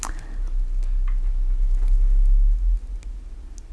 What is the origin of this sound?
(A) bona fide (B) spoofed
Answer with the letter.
A